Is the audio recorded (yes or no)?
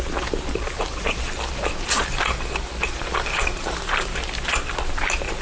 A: yes